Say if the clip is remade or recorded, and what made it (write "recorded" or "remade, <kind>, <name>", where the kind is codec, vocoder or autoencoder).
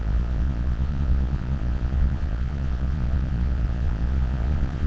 remade, vocoder, Vocos